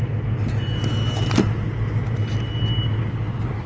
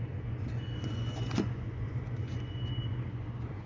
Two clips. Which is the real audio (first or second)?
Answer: first